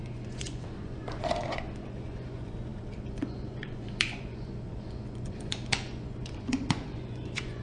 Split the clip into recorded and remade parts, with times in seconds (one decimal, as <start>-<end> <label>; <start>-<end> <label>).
0.0-7.6 remade